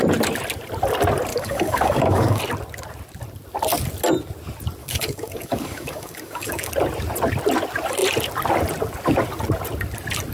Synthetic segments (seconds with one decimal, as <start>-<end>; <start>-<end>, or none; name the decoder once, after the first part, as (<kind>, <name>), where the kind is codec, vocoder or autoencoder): 1.3-2.4 (codec, DAC); 4.8-6.7